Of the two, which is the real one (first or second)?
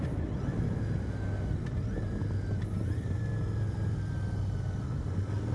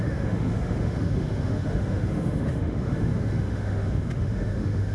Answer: first